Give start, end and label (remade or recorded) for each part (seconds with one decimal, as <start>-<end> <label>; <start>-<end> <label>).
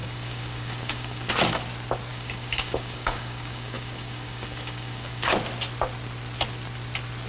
0.0-1.3 remade; 1.3-2.1 recorded; 2.1-5.3 remade; 5.3-7.3 recorded